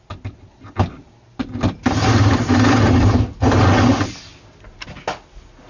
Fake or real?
real